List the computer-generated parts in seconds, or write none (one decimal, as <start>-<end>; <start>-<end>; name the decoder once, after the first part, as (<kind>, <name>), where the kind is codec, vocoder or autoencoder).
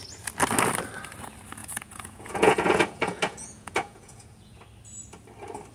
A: 1.6-4.6 (vocoder, Vocos)